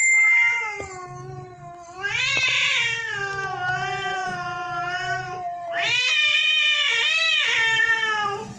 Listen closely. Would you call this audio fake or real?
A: real